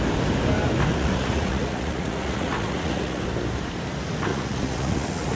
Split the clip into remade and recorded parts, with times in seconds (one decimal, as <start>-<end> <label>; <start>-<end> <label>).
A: 0.0-0.9 recorded; 0.9-3.2 remade; 3.2-4.3 recorded; 4.3-5.4 remade